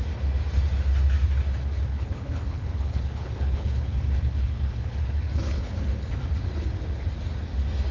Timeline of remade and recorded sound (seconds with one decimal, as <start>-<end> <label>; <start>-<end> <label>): 0.0-1.9 recorded; 1.9-6.2 remade; 6.2-7.9 recorded